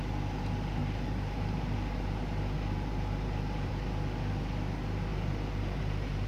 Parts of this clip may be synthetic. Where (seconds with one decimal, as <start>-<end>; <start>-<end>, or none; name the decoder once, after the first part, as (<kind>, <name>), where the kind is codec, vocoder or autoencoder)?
0.8-3.7 (vocoder, BigVGAN v2); 5.1-6.3